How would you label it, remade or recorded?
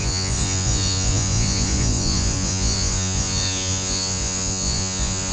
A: remade